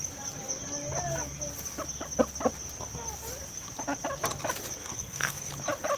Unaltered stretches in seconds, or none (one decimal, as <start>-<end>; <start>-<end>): 0.0-4.8; 5.5-6.0